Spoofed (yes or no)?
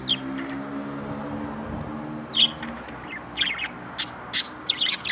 no